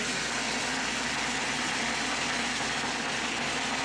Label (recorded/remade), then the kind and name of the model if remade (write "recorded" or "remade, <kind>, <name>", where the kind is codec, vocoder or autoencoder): recorded